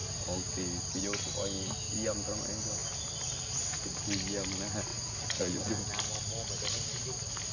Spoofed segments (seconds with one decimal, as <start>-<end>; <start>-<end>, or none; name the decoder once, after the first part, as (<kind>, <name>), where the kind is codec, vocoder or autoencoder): 4.9-5.7 (vocoder, Vocos)